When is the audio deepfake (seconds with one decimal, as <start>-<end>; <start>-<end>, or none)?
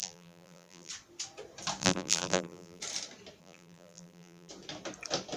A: 0.0-0.9; 1.8-2.8; 3.4-4.5